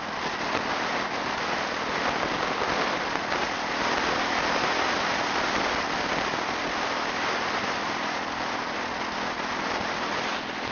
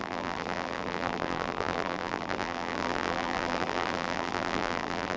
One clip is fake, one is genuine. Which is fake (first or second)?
second